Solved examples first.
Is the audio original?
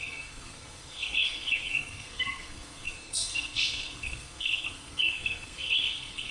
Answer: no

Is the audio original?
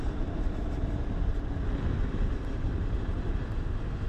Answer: yes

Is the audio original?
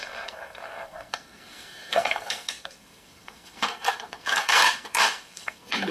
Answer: no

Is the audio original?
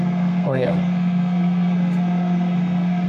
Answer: no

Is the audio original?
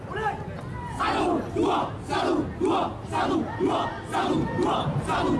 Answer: yes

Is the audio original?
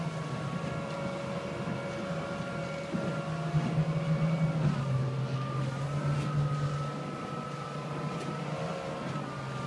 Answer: yes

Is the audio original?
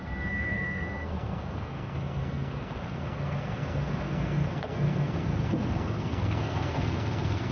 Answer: no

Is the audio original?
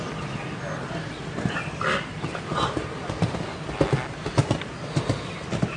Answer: yes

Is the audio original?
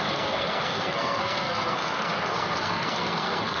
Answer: no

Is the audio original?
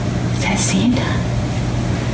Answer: yes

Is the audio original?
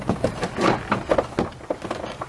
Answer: yes